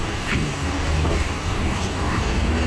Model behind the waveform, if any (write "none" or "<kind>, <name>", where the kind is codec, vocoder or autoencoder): codec, DAC